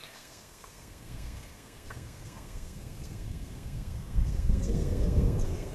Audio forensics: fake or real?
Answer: fake